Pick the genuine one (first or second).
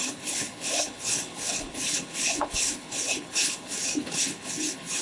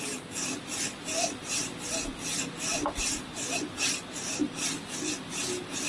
second